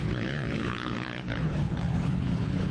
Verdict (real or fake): fake